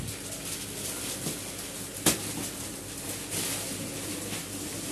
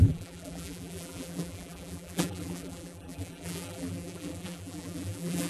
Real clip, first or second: first